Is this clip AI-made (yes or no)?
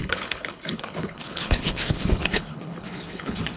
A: yes